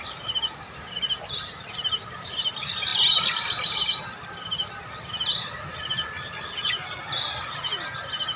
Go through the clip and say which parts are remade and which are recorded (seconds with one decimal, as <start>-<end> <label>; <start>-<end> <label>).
0.0-8.4 recorded